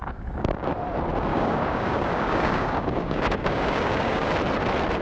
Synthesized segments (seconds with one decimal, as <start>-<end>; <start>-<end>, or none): 0.0-0.7; 1.3-4.3